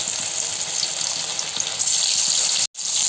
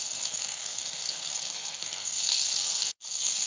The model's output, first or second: second